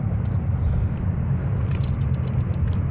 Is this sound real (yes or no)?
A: yes